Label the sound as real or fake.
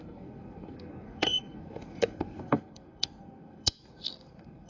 fake